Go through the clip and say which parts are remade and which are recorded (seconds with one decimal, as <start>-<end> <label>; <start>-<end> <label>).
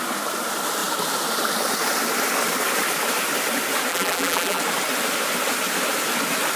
0.0-3.9 recorded; 3.9-4.6 remade; 4.6-6.6 recorded